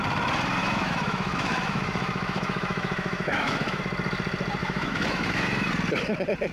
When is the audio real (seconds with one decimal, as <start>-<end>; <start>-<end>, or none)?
0.0-0.6; 3.8-4.6; 5.7-6.5